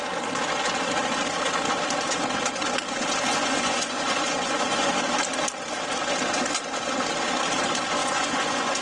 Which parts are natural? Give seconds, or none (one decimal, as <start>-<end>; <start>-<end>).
0.0-3.3; 4.9-8.0